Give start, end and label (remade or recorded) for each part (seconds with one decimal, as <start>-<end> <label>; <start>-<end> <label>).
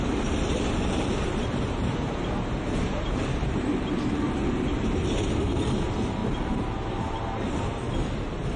0.0-1.2 recorded; 1.2-3.9 remade; 3.9-6.2 recorded; 6.2-7.8 remade; 7.8-8.6 recorded